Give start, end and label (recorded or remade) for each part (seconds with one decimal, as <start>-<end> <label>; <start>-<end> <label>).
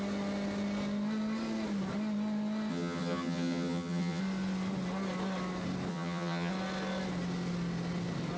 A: 0.0-2.7 recorded; 2.7-4.2 remade; 4.2-5.9 recorded; 5.9-6.5 remade; 6.5-8.4 recorded